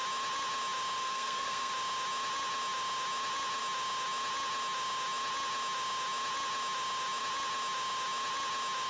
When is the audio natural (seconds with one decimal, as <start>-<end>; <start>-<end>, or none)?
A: 0.0-1.0; 1.7-8.9